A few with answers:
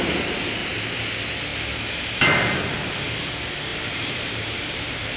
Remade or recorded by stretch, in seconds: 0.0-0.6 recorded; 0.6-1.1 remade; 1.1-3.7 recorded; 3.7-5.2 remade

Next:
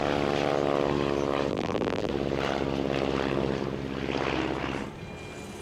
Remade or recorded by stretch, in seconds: 0.0-1.5 recorded; 1.5-2.1 remade; 2.1-5.6 recorded

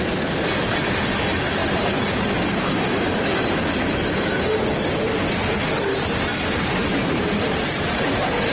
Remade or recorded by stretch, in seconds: 0.0-8.5 recorded